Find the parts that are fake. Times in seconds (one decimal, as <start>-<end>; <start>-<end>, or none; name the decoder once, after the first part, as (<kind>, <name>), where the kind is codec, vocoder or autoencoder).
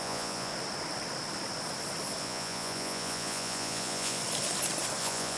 0.0-0.5 (vocoder, Vocos); 2.2-4.2; 5.0-5.4